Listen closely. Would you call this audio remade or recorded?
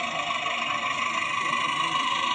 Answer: recorded